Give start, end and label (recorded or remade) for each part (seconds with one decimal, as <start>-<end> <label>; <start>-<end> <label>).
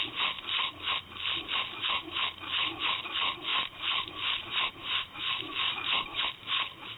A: 0.0-3.5 recorded; 3.5-6.2 remade; 6.2-7.0 recorded